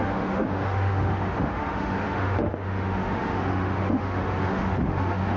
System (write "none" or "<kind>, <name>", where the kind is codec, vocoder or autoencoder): autoencoder, DAC-VAE